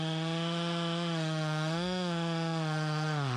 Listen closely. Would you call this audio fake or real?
fake